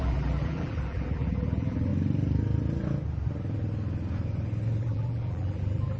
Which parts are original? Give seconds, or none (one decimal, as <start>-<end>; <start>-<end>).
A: 1.9-4.8